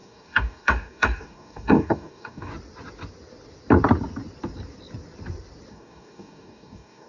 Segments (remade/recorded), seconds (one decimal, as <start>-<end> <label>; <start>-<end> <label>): 0.0-2.5 remade; 2.5-5.7 recorded; 5.7-7.1 remade